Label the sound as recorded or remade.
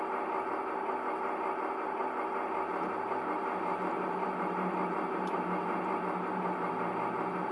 recorded